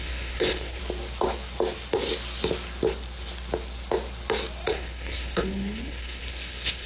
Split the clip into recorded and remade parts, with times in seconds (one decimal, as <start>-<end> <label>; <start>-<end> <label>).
0.0-0.8 remade; 0.8-4.7 recorded; 4.7-6.9 remade